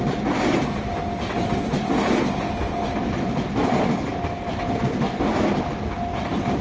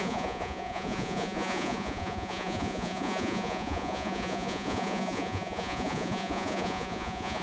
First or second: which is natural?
first